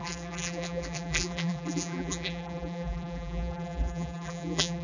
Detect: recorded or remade remade